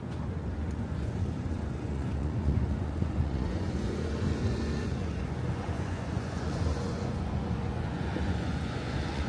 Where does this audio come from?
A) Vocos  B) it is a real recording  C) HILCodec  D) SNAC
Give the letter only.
A